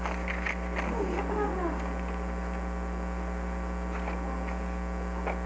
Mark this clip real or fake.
real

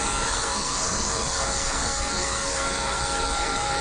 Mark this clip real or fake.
fake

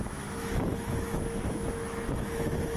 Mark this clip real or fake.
fake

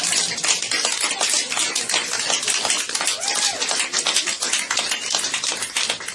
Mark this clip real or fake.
real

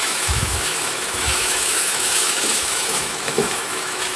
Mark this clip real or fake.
fake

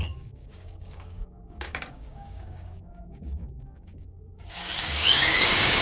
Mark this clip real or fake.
fake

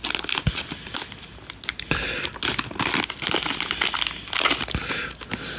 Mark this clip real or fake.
real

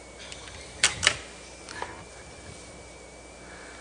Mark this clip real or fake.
real